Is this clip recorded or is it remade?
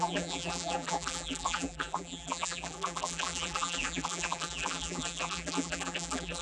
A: remade